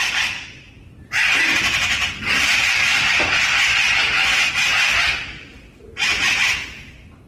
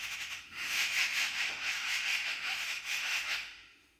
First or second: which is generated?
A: second